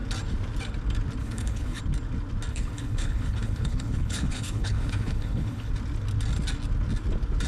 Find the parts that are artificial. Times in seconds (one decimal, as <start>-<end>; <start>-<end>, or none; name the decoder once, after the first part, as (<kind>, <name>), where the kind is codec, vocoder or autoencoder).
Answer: 1.2-1.8 (codec, HILCodec); 2.5-5.7